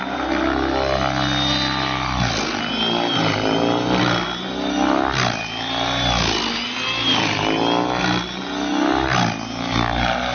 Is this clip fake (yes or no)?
no